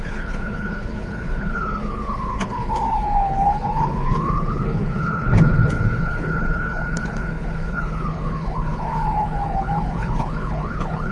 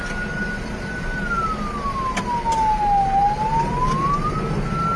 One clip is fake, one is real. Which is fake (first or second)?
first